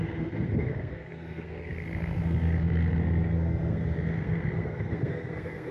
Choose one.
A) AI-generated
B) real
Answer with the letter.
A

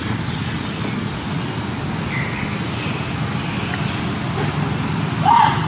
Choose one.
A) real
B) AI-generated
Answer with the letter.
A